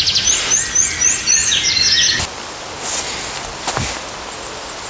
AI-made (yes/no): no